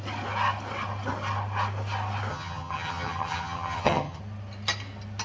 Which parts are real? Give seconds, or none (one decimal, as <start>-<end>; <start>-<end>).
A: 0.0-2.3; 4.2-5.2